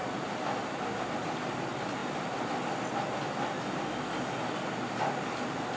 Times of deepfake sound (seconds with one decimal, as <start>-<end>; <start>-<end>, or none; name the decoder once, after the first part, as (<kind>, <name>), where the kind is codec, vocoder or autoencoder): none

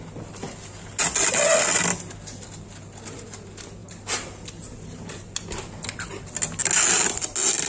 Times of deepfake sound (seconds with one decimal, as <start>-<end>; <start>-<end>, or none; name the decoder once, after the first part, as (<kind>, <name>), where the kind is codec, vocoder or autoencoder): none

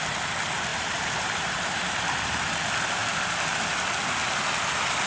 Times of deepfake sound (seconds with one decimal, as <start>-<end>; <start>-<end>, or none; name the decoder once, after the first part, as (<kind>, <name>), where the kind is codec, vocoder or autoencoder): 0.7-2.0 (vocoder, BigVGAN v2)

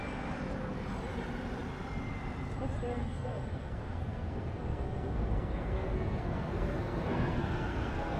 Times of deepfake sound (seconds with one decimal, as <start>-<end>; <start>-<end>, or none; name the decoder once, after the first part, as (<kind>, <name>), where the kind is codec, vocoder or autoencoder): 2.9-8.2 (codec, SNAC)

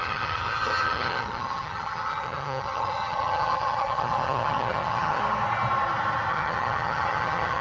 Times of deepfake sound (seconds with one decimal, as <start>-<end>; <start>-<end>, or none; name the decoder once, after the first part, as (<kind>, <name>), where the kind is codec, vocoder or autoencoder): 0.0-5.2 (vocoder, HiFi-GAN); 6.3-7.6

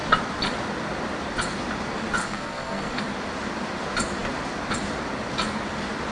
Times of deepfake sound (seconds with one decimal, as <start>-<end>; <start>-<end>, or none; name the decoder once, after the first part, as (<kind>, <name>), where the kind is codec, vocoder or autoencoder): 2.2-3.0 (codec, SNAC)

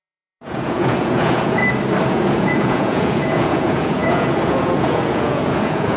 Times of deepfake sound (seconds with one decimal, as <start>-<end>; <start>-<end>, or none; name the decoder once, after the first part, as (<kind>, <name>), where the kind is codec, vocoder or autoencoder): 0.0-1.6 (vocoder, Vocos); 2.1-6.0